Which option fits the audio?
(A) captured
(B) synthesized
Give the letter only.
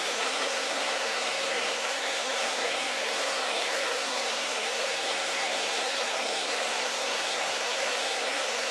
B